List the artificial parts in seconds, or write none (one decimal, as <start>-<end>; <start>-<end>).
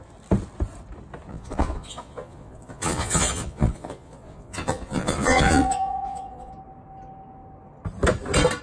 1.3-6.5